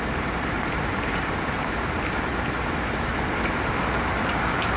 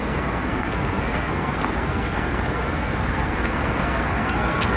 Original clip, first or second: first